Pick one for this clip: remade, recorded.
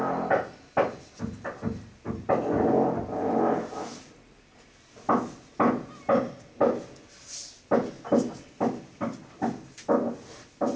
recorded